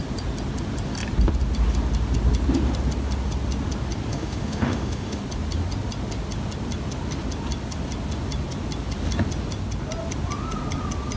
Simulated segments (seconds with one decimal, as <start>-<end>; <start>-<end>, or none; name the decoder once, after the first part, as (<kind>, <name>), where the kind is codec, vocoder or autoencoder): 4.1-5.2 (autoencoder, DAC-VAE)